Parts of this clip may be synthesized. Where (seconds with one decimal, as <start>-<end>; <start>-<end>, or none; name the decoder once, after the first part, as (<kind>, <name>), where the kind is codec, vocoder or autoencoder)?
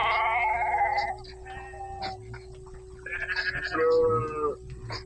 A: none